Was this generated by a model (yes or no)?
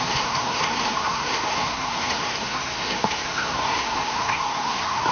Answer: yes